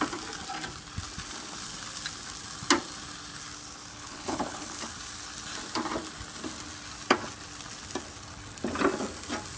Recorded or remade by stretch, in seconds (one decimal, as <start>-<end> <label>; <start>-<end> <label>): 0.0-3.9 recorded; 3.9-4.9 remade; 4.9-9.6 recorded